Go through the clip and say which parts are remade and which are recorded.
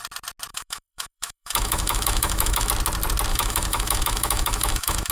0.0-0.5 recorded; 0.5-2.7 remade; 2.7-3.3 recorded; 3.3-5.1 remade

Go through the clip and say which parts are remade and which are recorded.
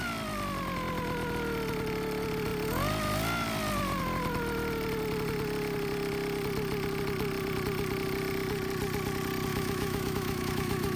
0.0-9.5 recorded; 9.5-11.0 remade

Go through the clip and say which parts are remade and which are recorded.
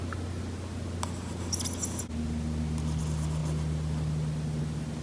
0.0-5.0 recorded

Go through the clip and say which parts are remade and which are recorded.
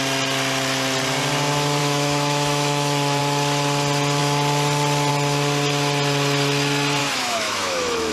0.0-1.8 recorded; 1.8-3.2 remade; 3.2-7.0 recorded; 7.0-8.1 remade